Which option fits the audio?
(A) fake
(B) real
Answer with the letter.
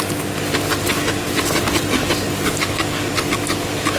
B